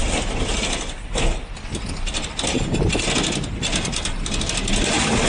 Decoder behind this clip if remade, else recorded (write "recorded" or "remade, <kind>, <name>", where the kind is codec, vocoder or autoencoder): recorded